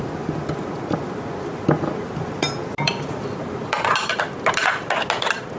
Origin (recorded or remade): recorded